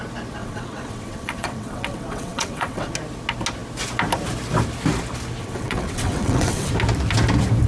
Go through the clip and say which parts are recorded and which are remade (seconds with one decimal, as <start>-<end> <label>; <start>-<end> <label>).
0.0-0.4 recorded; 0.4-2.9 remade; 2.9-5.4 recorded; 5.4-6.7 remade; 6.7-7.7 recorded